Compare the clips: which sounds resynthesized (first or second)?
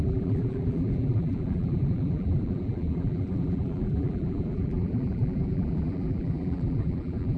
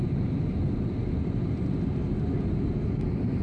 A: first